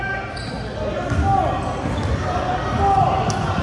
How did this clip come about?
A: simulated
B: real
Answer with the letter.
B